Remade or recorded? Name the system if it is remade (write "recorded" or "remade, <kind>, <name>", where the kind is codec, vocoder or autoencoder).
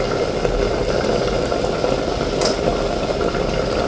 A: recorded